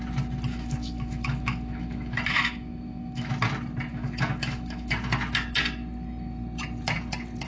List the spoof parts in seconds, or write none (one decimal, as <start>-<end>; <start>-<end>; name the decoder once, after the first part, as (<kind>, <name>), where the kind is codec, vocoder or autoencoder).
0.5-3.3 (autoencoder, DAC-VAE); 3.9-4.9